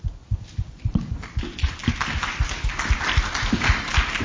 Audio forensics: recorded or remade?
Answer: recorded